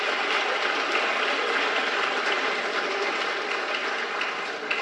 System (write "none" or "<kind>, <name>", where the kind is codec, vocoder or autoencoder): vocoder, BigVGAN v2